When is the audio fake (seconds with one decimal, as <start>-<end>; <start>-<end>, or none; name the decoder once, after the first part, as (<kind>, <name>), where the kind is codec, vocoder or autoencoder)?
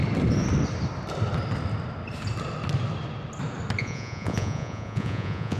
3.8-5.6 (vocoder, Vocos)